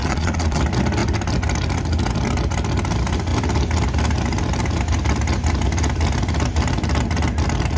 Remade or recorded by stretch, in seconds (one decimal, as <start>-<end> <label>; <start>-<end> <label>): 0.0-0.6 remade; 0.6-7.8 recorded